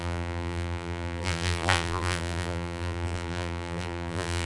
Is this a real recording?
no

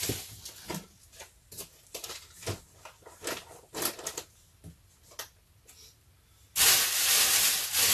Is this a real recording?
yes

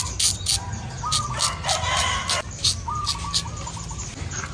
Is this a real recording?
yes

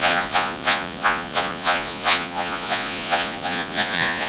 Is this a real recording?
no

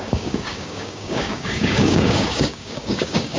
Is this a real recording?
no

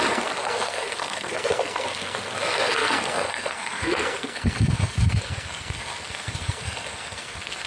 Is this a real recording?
no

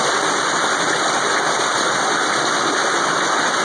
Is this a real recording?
yes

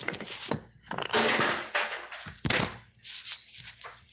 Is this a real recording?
yes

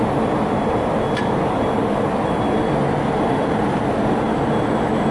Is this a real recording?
yes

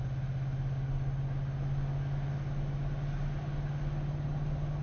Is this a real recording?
yes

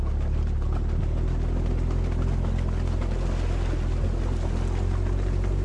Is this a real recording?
yes